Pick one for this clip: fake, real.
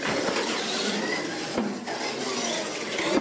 real